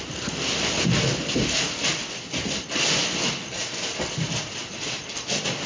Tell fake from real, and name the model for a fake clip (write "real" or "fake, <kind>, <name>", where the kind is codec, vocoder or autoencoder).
real